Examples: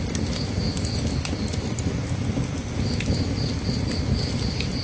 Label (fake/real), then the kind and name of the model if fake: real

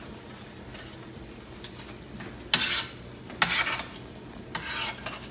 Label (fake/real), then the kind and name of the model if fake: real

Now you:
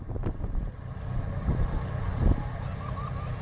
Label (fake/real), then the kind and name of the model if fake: real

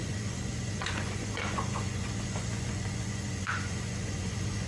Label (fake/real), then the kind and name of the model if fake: fake, vocoder, Vocos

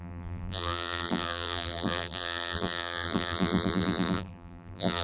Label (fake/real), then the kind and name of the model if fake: fake, vocoder, BigVGAN v2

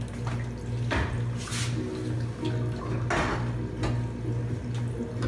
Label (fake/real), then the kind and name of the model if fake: real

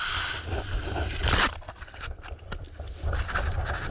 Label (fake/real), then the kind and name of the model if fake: real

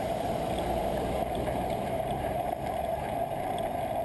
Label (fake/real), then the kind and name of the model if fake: fake, vocoder, BigVGAN v2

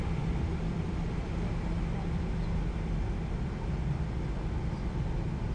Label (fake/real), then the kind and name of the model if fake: real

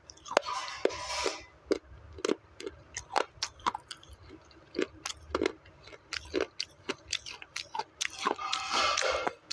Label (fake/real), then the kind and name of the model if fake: real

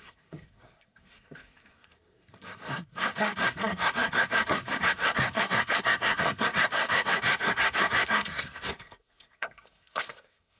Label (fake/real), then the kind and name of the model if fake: fake, codec, SNAC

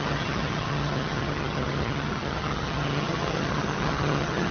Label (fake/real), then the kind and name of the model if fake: fake, vocoder, HiFi-GAN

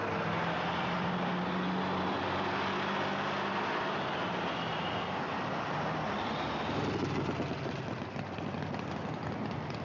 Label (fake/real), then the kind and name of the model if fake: real